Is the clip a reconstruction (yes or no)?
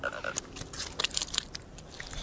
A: no